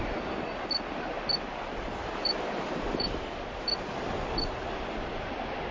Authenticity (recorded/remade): recorded